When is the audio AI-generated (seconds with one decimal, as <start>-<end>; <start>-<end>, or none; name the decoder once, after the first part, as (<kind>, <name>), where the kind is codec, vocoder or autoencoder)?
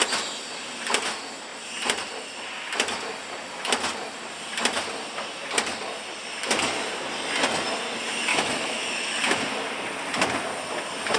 8.3-9.4 (autoencoder, DAC-VAE)